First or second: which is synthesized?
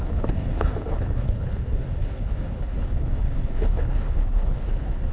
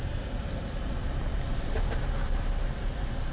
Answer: first